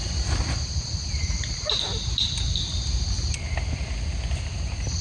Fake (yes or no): no